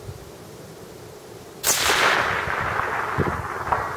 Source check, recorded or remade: recorded